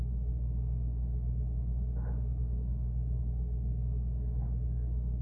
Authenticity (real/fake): real